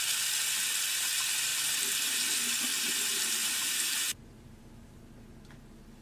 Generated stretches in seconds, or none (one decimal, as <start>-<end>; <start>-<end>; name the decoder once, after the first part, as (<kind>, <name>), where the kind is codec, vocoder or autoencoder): 1.5-2.3 (vocoder, BigVGAN v2); 3.4-5.0